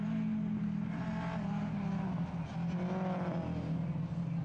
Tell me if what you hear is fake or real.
real